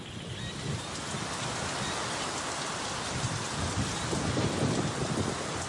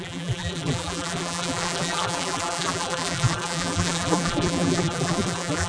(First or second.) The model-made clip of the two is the second